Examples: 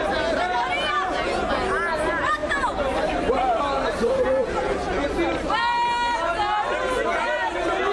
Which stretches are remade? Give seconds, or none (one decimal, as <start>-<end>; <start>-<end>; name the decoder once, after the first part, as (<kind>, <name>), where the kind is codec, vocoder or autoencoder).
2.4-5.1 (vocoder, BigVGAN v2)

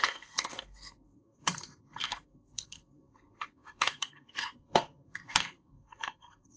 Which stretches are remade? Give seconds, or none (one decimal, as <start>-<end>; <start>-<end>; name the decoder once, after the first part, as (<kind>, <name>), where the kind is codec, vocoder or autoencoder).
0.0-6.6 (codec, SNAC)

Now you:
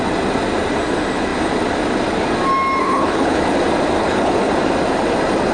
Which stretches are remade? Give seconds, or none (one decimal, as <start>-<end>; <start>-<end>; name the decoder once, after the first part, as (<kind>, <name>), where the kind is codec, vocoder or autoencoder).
2.8-3.4 (codec, HILCodec); 4.0-4.5

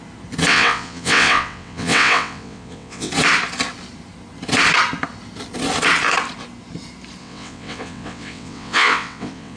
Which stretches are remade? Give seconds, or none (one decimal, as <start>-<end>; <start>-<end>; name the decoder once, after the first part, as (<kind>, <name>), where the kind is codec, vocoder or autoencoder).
0.5-3.1 (vocoder, WaveNeXt); 7.2-9.6

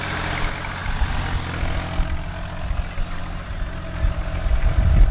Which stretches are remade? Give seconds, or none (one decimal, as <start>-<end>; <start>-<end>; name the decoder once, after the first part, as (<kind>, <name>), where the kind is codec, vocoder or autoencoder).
none

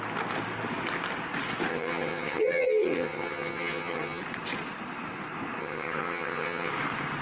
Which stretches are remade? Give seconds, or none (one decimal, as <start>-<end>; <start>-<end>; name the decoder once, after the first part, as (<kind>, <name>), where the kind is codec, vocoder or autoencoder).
1.7-4.2 (vocoder, HiFi-GAN); 5.6-6.7